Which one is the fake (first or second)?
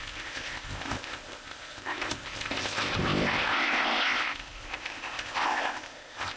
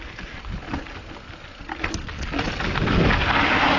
first